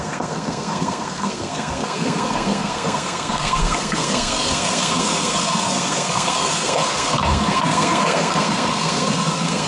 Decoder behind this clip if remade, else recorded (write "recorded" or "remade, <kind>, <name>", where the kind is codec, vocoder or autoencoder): remade, codec, SNAC